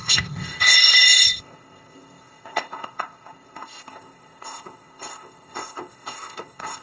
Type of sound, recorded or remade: remade